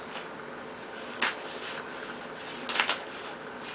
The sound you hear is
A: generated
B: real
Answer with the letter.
B